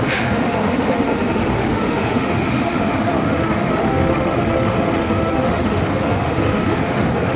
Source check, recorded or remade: remade